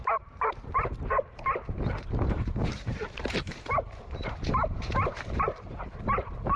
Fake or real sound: fake